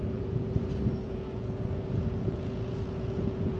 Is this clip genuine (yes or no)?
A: no